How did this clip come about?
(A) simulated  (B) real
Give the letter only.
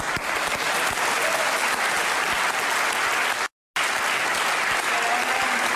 B